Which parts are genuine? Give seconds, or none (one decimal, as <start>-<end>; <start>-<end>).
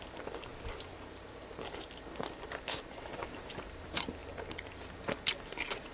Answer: 0.0-5.9